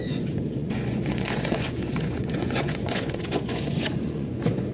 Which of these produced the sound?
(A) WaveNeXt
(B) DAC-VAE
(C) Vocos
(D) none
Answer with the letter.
C